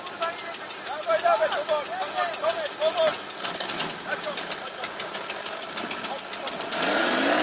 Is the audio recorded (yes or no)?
yes